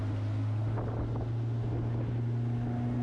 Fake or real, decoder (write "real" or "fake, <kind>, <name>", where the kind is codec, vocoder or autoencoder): real